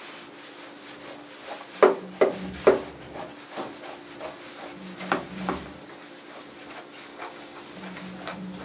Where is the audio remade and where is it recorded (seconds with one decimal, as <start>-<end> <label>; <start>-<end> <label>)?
0.0-7.1 recorded; 7.1-7.6 remade; 7.6-8.6 recorded